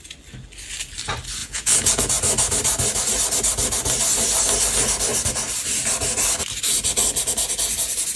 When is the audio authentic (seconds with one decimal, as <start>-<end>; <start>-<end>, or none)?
0.0-1.4; 2.0-8.2